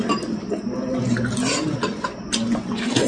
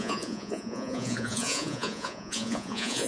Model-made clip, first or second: second